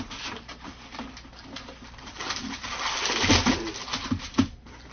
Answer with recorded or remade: recorded